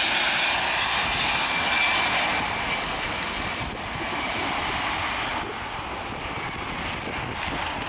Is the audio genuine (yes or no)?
yes